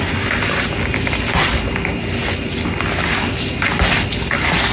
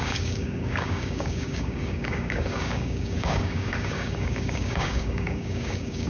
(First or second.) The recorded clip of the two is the first